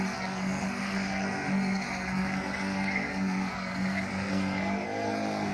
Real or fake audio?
fake